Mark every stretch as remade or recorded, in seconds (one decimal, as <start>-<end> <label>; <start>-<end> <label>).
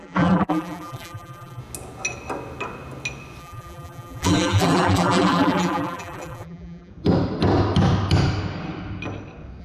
0.0-1.6 remade; 1.6-3.4 recorded; 3.4-6.9 remade; 6.9-9.6 recorded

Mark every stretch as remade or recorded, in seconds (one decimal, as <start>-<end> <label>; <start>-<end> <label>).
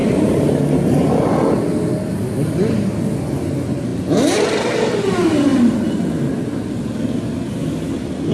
0.0-1.3 remade; 1.3-8.3 recorded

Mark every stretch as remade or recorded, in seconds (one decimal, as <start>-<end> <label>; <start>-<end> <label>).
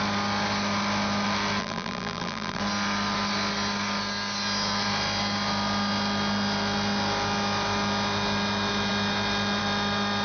0.0-1.6 recorded; 1.6-2.6 remade; 2.6-10.2 recorded